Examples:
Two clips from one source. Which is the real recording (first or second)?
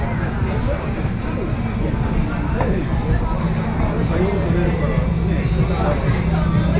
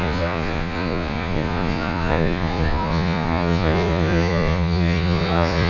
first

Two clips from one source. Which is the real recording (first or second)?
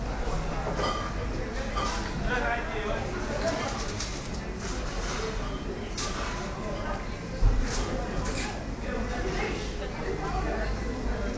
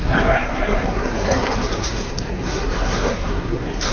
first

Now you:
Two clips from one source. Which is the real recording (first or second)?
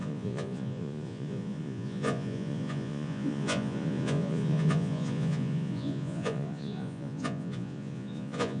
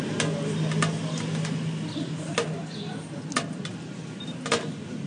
second